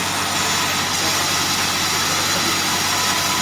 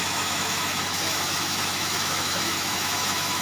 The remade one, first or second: second